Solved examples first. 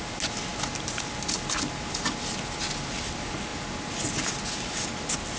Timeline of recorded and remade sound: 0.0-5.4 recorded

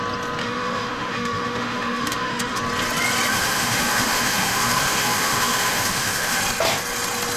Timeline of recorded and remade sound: 0.0-0.4 recorded; 0.4-2.6 remade; 2.6-3.3 recorded; 3.3-6.4 remade; 6.4-7.4 recorded

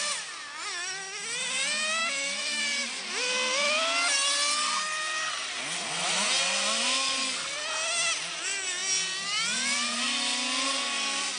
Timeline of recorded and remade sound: 0.0-2.0 recorded; 2.0-2.6 remade; 2.6-11.4 recorded